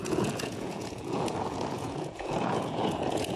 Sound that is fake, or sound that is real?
fake